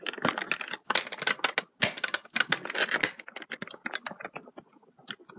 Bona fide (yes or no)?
yes